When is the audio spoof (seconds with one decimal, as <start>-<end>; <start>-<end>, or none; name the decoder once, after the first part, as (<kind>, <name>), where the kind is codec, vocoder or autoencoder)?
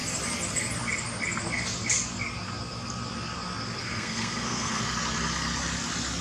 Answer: 3.8-4.8 (codec, SNAC)